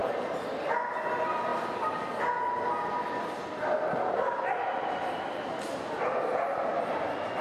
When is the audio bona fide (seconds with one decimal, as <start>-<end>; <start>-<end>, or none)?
0.6-7.4